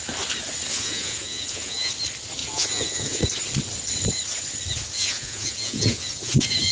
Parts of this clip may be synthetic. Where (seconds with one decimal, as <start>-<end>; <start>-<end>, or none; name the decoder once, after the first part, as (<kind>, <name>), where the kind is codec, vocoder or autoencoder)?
0.7-1.9 (vocoder, Vocos); 2.4-3.2; 5.0-6.7